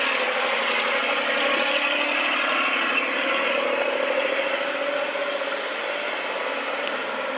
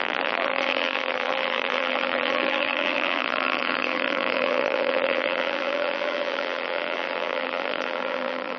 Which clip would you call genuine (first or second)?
first